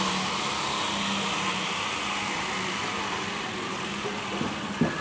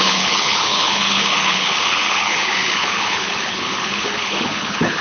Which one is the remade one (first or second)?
second